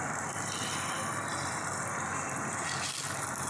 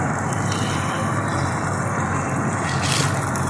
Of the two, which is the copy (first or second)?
first